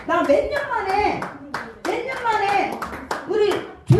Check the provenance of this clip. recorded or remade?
remade